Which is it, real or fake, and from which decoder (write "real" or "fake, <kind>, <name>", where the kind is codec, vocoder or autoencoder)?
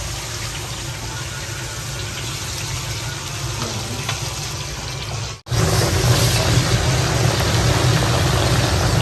real